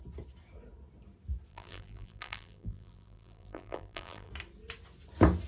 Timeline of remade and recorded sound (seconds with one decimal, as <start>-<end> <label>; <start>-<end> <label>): 0.0-1.5 recorded; 1.5-4.3 remade; 4.3-5.5 recorded